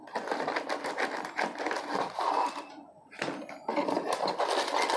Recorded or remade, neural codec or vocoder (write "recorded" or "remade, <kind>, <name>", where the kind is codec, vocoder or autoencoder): recorded